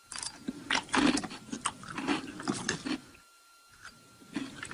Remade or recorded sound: recorded